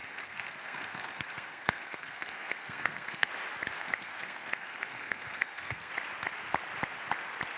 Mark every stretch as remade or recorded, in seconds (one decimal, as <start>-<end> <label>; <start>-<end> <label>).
0.0-3.3 remade; 3.3-3.8 recorded; 3.8-5.9 remade; 5.9-7.6 recorded